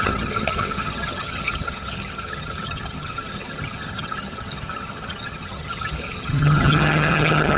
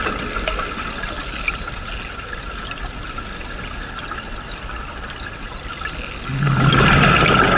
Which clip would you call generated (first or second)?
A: first